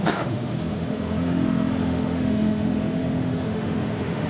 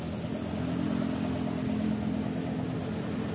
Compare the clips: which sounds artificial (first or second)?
first